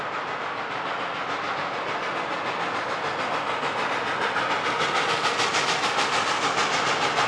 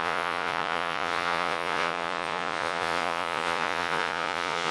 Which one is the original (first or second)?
first